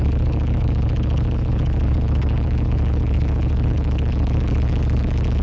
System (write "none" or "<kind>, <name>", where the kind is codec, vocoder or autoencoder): codec, HILCodec